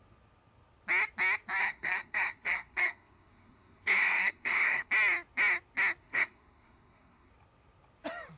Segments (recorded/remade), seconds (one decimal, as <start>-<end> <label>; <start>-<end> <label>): 0.0-1.6 recorded; 1.6-4.9 remade; 4.9-6.0 recorded; 6.0-7.3 remade; 7.3-8.4 recorded